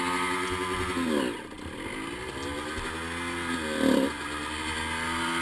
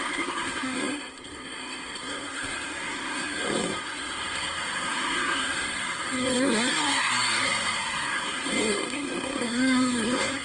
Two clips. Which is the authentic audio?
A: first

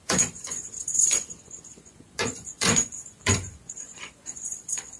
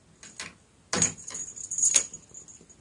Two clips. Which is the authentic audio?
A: second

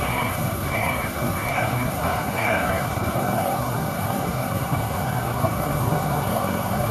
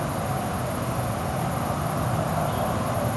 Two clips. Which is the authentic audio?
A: second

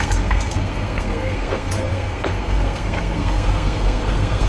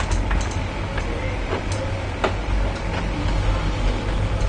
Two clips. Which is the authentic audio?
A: second